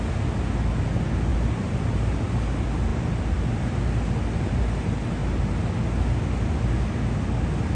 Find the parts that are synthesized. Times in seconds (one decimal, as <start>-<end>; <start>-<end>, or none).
1.3-1.9; 5.2-5.7